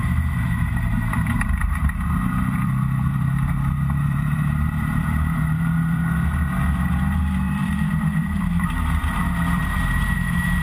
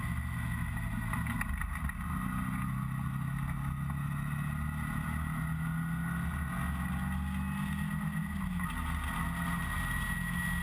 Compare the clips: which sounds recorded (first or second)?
second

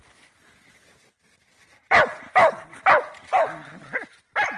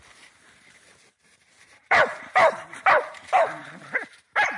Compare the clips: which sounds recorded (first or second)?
first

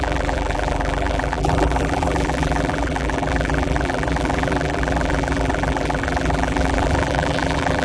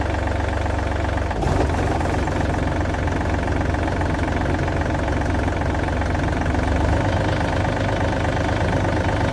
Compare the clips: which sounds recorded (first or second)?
second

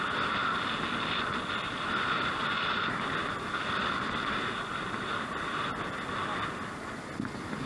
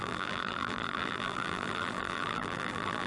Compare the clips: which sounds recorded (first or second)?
first